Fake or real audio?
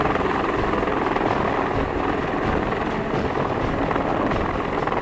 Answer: real